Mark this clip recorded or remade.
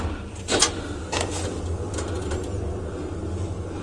recorded